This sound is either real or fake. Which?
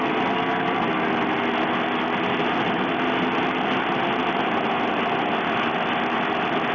real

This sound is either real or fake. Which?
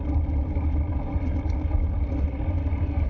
real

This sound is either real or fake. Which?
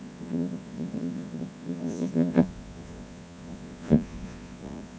fake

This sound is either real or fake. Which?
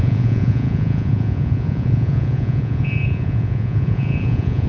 fake